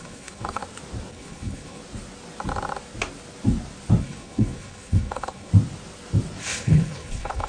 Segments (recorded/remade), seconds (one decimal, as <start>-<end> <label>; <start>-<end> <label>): 0.0-0.6 remade; 0.6-1.1 recorded; 1.1-1.8 remade; 1.8-4.0 recorded; 4.0-5.5 remade; 5.5-6.4 recorded; 6.4-7.5 remade